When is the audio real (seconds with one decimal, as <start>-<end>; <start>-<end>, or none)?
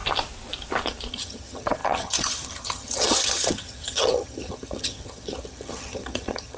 0.0-1.1